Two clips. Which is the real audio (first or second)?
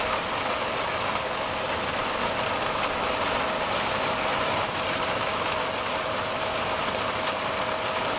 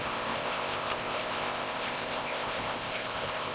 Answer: first